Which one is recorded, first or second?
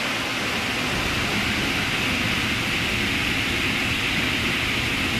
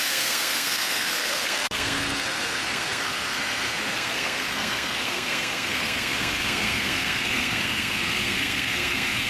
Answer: first